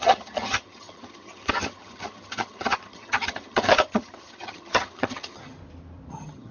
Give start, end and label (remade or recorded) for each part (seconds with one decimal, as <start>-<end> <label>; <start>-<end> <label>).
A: 0.0-5.6 remade; 5.6-6.1 recorded; 6.1-6.5 remade